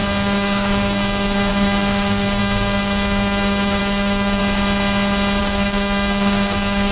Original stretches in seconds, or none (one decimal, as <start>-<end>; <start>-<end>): 4.4-5.4